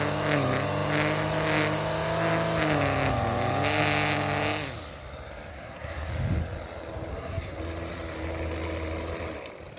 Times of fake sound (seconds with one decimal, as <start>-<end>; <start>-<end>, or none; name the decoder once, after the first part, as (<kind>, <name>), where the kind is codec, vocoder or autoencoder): 5.5-6.1 (codec, SNAC); 7.1-7.6